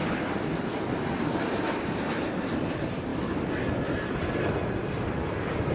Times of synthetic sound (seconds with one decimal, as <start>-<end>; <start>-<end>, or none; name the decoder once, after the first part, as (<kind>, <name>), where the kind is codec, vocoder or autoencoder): 1.1-3.1 (vocoder, BigVGAN v2); 5.1-5.7